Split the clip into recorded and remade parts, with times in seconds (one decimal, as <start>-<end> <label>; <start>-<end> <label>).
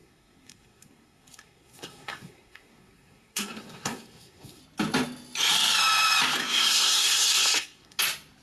0.0-4.6 remade; 4.6-6.4 recorded; 6.4-8.0 remade; 8.0-8.4 recorded